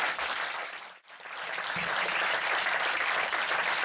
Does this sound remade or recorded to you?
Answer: recorded